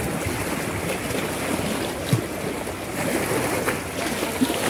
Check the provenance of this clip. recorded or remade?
recorded